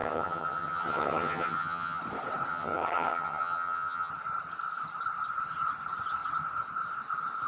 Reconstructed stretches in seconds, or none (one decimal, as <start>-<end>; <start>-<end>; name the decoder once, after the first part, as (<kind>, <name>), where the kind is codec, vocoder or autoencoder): 0.0-2.0 (vocoder, HiFi-GAN); 2.5-4.1